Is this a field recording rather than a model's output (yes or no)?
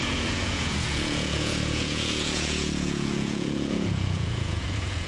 no